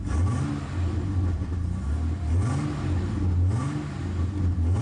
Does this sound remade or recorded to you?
recorded